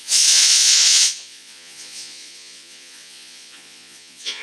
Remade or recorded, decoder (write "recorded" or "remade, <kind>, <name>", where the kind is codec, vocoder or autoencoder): remade, vocoder, Vocos